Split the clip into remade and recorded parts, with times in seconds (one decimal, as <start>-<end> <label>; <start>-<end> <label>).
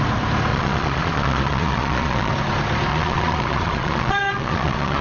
0.0-0.5 recorded; 0.5-2.3 remade; 2.3-2.9 recorded; 2.9-5.0 remade